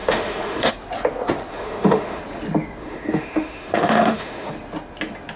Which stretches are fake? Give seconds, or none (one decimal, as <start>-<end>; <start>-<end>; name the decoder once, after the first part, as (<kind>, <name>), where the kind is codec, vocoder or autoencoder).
0.0-0.7 (autoencoder, DAC-VAE); 1.5-2.2; 2.8-4.5